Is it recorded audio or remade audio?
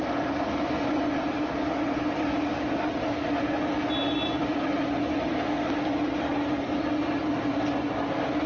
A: recorded